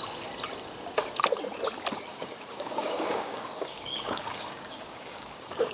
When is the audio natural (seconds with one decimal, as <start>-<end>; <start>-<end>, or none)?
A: 0.0-2.1